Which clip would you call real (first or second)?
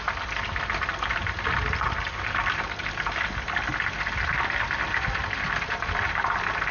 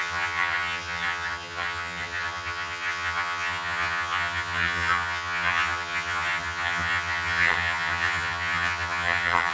first